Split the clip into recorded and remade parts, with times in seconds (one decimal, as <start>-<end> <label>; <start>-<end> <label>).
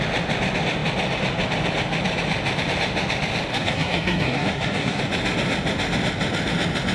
0.0-3.5 recorded; 3.5-5.0 remade; 5.0-6.9 recorded